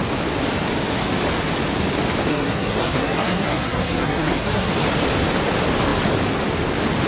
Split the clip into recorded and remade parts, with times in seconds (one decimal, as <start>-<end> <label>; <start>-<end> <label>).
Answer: 0.0-2.3 recorded; 2.3-4.7 remade; 4.7-7.1 recorded

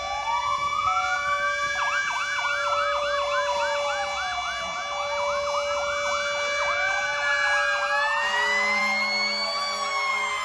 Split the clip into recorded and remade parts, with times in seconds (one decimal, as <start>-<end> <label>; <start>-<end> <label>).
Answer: 0.0-10.4 recorded

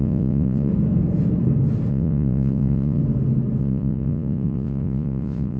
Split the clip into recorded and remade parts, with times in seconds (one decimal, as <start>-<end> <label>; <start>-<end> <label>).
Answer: 0.0-0.7 remade; 0.7-1.9 recorded; 1.9-3.0 remade; 3.0-3.6 recorded; 3.6-5.6 remade

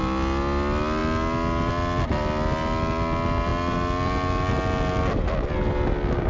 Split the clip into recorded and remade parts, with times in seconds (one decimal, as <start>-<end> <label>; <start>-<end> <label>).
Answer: 0.0-6.3 recorded

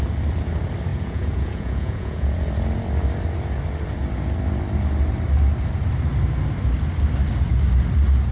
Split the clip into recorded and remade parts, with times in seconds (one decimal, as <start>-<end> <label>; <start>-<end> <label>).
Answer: 0.0-0.9 recorded; 0.9-2.4 remade; 2.4-8.3 recorded

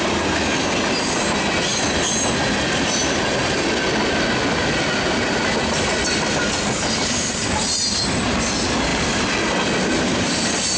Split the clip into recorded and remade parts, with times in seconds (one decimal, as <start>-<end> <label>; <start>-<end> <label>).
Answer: 0.0-10.8 recorded

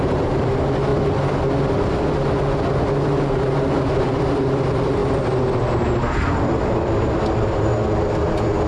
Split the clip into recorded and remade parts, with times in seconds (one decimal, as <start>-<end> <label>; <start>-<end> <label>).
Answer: 0.0-0.9 remade; 0.9-4.0 recorded; 4.0-7.7 remade; 7.7-8.7 recorded